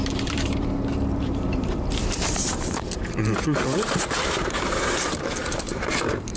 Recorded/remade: remade